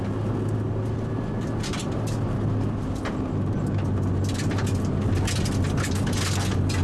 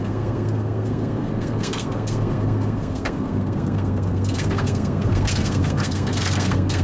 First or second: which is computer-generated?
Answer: second